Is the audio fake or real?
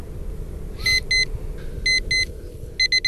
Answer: real